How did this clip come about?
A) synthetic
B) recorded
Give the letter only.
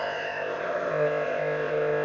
A